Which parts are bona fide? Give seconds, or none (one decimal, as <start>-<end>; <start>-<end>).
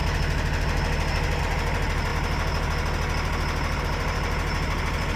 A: 0.0-1.4; 2.1-3.8